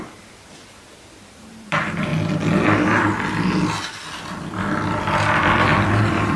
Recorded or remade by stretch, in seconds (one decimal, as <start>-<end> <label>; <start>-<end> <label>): 0.0-2.1 remade; 2.1-5.9 recorded; 5.9-6.4 remade